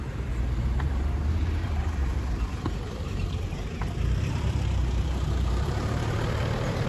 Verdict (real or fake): fake